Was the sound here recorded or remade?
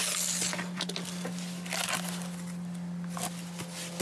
recorded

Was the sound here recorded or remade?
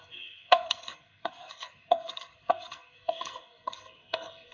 remade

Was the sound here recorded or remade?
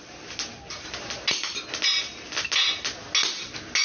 recorded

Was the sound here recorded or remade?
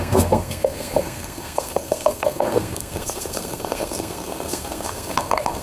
remade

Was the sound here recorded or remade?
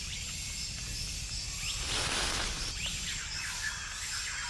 recorded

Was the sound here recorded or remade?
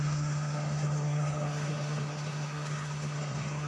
remade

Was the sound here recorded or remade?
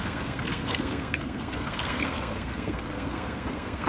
remade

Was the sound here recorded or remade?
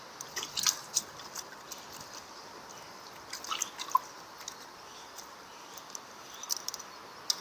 recorded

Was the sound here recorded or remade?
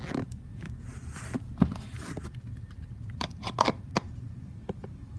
recorded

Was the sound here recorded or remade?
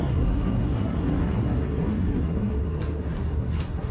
remade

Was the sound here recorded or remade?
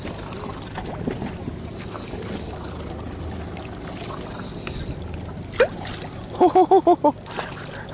recorded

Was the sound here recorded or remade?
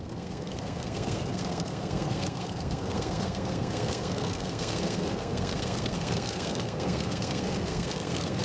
remade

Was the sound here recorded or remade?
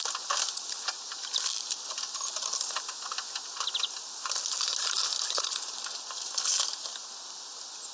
recorded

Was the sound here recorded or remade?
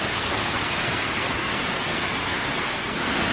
remade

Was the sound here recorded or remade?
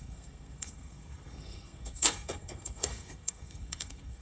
remade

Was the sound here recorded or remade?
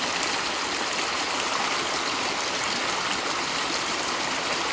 recorded